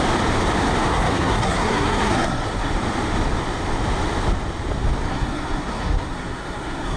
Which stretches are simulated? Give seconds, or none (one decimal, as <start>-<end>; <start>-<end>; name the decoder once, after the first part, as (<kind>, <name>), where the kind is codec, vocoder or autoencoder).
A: 0.9-2.7 (codec, SNAC); 5.1-7.0

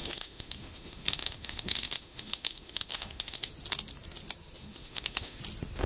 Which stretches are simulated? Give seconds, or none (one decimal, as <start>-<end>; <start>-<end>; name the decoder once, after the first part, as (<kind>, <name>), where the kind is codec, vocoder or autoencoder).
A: 0.0-3.5 (autoencoder, DAC-VAE); 4.6-5.4

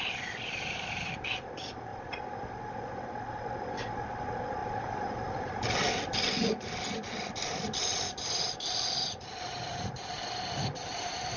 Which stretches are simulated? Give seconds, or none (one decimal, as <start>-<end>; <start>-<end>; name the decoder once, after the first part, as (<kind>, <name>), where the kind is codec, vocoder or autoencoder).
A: 1.9-2.9 (vocoder, BigVGAN v2); 4.6-5.6

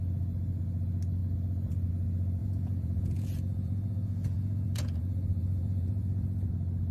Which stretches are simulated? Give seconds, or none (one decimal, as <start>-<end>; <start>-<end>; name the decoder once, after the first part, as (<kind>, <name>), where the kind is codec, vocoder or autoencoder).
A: 2.4-6.5 (vocoder, Vocos)

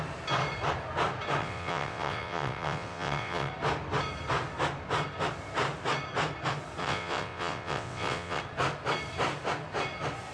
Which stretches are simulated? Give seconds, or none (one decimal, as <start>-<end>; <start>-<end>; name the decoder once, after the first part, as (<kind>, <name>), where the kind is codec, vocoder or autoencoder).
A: 1.4-3.5 (vocoder, WaveNeXt); 6.8-8.4

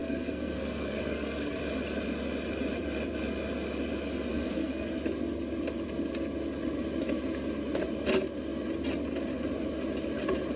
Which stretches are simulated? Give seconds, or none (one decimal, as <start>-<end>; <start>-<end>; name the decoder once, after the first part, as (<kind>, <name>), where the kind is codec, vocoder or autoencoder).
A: 0.0-1.6 (codec, SNAC); 4.3-4.9